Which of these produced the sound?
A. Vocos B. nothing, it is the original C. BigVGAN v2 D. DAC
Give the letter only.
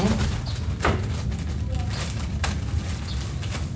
B